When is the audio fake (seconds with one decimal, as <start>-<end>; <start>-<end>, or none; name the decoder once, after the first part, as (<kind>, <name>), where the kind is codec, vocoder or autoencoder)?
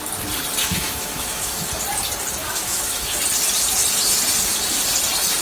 0.6-1.7 (autoencoder, DAC-VAE); 2.4-3.2